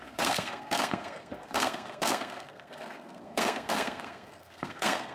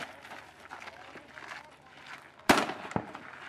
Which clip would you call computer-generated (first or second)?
first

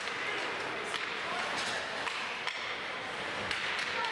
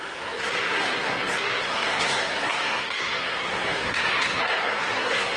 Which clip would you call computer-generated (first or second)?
second